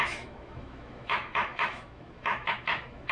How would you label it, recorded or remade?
remade